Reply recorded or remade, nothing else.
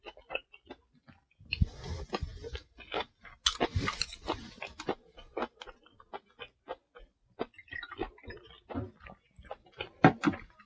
recorded